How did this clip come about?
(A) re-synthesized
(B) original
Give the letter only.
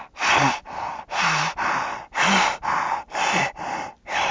B